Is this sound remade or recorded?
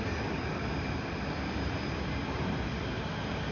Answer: recorded